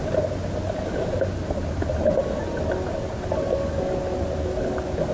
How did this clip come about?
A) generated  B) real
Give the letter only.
B